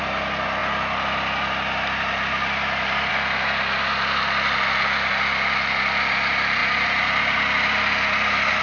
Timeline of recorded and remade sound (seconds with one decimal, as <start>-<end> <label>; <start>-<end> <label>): 0.0-8.6 recorded